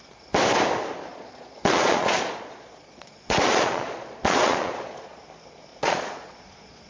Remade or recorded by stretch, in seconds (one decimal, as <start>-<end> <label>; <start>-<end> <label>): 0.0-1.1 recorded; 1.1-5.2 remade; 5.2-5.7 recorded; 5.7-6.9 remade